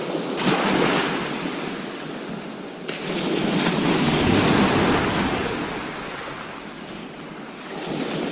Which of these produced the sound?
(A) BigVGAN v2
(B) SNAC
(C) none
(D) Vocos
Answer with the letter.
C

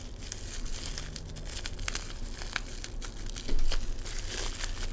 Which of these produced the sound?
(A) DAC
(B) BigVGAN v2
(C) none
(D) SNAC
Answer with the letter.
C